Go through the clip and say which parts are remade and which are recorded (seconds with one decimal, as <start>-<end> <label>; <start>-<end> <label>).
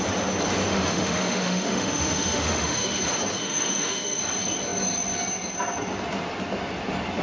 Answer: 0.0-0.7 recorded; 0.7-3.0 remade; 3.0-3.4 recorded; 3.4-4.2 remade; 4.2-7.2 recorded